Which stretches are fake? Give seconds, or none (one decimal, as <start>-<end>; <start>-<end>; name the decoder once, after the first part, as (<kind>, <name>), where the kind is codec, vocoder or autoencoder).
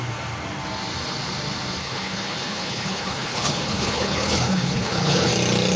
1.8-5.3 (codec, HILCodec)